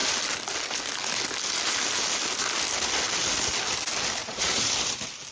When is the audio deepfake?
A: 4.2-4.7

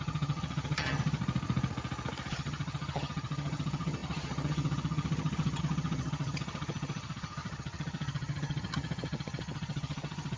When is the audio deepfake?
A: 0.0-1.2; 2.3-10.4

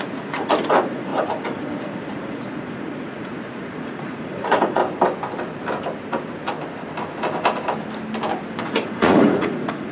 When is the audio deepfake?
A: 0.0-4.8; 8.6-9.9

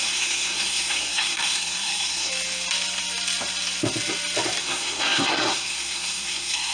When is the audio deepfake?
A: 0.0-2.3; 4.6-6.7